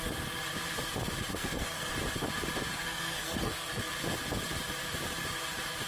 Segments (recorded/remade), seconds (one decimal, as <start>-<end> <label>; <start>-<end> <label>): 0.0-1.3 recorded; 1.3-1.9 remade; 1.9-2.7 recorded; 2.7-3.8 remade; 3.8-5.9 recorded